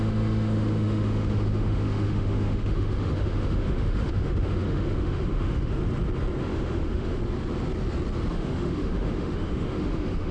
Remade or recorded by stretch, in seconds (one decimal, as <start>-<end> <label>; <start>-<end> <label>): 0.0-5.8 remade; 5.8-6.4 recorded; 6.4-7.2 remade; 7.2-8.3 recorded; 8.3-10.3 remade